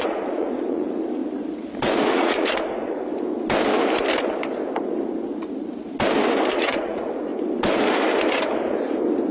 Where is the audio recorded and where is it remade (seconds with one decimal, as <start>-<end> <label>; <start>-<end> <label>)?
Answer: 0.0-1.2 remade; 1.2-2.1 recorded; 2.1-3.1 remade; 3.1-6.5 recorded; 6.5-7.3 remade; 7.3-9.3 recorded